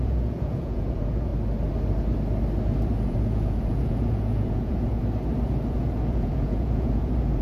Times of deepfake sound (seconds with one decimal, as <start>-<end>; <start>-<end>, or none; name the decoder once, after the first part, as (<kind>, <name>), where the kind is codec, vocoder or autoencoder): 0.0-1.3 (vocoder, Vocos); 3.1-5.0; 5.7-7.4